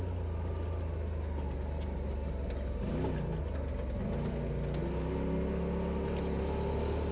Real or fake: real